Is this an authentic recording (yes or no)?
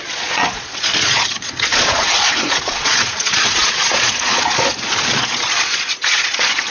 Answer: no